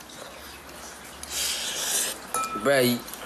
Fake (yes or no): no